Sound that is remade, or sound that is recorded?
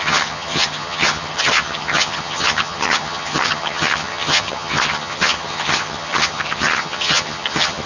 remade